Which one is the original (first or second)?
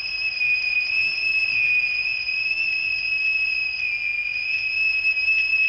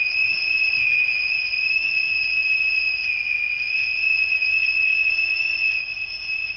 first